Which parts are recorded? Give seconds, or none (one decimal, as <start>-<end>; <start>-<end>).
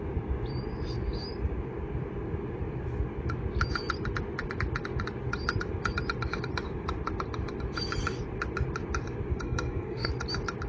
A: 0.0-9.3; 10.1-10.7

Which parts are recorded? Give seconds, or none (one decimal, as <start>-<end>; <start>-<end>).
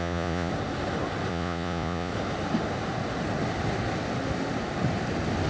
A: 0.5-1.3; 2.1-5.5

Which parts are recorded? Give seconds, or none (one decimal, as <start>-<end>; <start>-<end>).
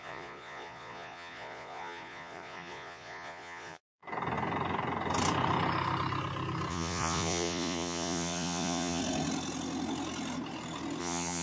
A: 4.0-6.7; 9.0-11.0